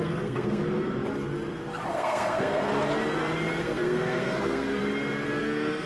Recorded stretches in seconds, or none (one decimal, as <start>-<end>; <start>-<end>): 0.6-1.9; 2.7-3.6; 4.8-5.4